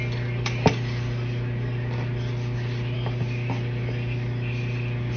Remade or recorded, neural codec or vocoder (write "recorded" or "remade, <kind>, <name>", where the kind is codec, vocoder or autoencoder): recorded